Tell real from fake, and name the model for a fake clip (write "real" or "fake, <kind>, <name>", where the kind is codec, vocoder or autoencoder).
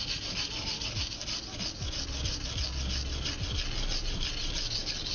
real